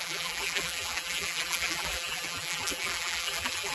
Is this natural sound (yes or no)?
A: no